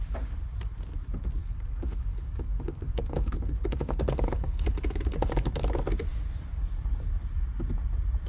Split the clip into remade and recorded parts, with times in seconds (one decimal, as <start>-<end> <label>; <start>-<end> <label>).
0.0-1.4 recorded; 1.4-5.5 remade; 5.5-8.3 recorded